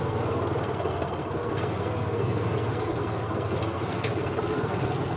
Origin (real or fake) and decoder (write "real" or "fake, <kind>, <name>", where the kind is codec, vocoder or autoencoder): fake, codec, SNAC